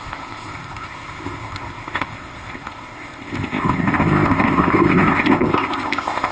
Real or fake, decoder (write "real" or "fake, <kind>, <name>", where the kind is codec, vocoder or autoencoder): fake, codec, ZipCodec